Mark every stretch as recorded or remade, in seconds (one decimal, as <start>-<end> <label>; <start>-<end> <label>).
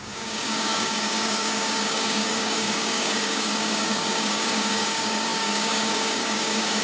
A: 0.0-6.8 remade